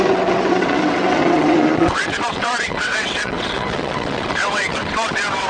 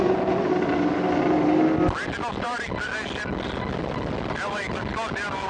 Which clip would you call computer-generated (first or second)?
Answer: first